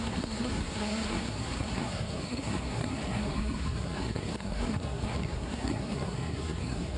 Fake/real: fake